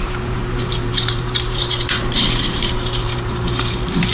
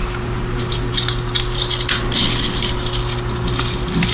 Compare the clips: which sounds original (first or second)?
second